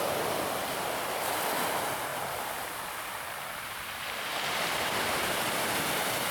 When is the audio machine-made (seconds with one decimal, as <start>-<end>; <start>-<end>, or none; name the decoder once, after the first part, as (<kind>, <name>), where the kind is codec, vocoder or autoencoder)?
0.6-1.2 (vocoder, BigVGAN v2); 2.1-6.3